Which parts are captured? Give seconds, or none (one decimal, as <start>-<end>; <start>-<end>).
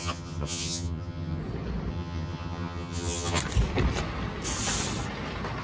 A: 1.4-1.9; 3.4-5.6